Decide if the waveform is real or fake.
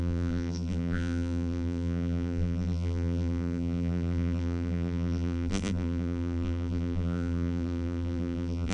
fake